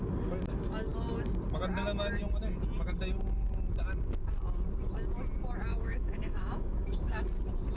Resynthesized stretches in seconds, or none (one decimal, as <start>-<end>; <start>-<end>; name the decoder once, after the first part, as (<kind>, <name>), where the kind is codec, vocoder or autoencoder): 5.7-7.2 (autoencoder, DAC-VAE)